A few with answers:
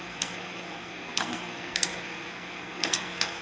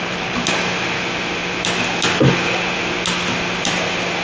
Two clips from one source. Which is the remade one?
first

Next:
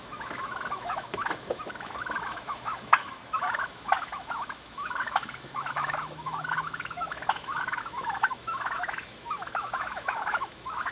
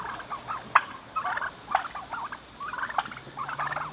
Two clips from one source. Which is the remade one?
first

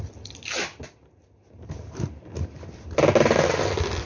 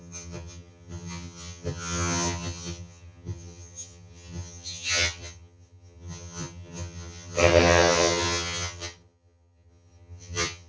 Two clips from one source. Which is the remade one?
second